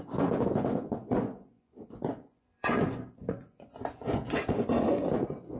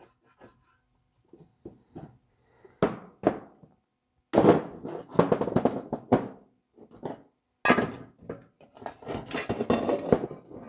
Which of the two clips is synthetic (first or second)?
first